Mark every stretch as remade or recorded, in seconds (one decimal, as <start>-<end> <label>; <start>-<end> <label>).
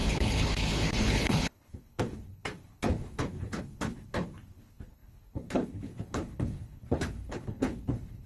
0.0-8.3 remade